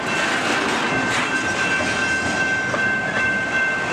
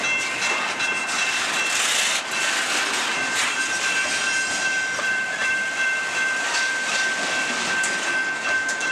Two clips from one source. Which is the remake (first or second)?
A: second